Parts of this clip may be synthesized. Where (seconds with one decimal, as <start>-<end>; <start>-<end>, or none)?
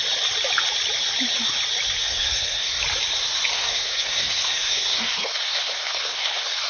2.0-2.8; 3.5-6.7